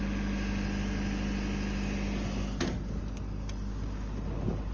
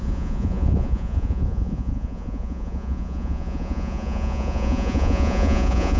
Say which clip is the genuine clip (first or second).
first